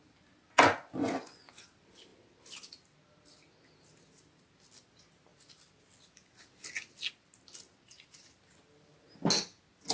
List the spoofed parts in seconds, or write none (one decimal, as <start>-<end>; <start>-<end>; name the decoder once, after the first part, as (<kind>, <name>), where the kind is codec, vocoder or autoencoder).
1.0-1.5 (vocoder, Vocos)